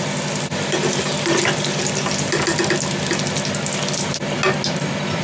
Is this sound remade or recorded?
recorded